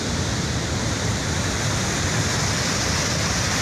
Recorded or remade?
recorded